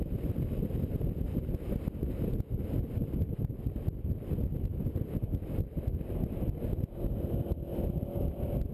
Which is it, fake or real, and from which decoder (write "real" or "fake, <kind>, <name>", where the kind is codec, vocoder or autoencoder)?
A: real